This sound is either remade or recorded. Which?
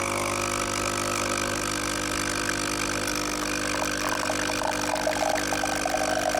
recorded